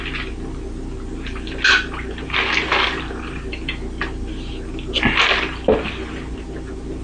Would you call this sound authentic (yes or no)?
yes